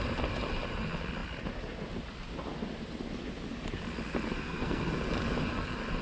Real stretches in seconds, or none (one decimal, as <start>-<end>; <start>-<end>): 0.0-4.3; 4.9-6.0